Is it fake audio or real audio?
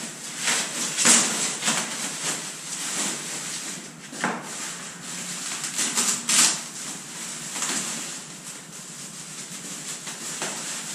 real